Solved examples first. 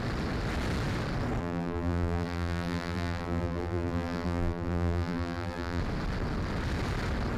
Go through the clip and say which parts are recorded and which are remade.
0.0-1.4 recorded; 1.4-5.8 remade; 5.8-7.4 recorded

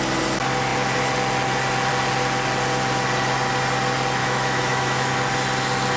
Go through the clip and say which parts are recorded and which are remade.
0.0-4.2 recorded; 4.2-5.1 remade; 5.1-6.0 recorded

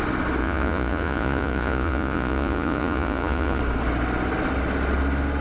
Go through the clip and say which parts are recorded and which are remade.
0.0-0.4 recorded; 0.4-3.6 remade; 3.6-5.4 recorded

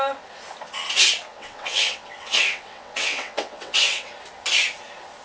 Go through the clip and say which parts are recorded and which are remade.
0.0-1.3 recorded; 1.3-4.1 remade; 4.1-5.2 recorded

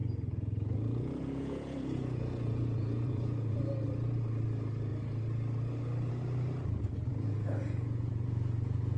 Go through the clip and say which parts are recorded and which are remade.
0.0-3.6 remade; 3.6-7.1 recorded; 7.1-8.1 remade; 8.1-9.0 recorded